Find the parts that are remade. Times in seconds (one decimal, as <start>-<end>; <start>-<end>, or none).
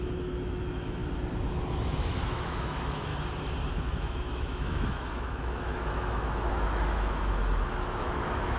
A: 0.0-1.0; 1.7-3.1; 3.7-8.6